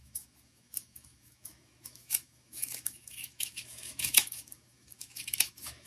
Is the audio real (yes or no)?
no